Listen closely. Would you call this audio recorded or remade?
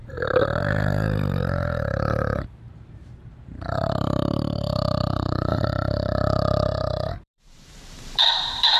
remade